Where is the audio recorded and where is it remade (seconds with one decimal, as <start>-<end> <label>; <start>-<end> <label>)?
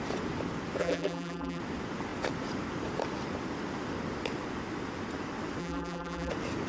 0.0-0.8 recorded; 0.8-1.6 remade; 1.6-5.6 recorded; 5.6-6.3 remade; 6.3-6.7 recorded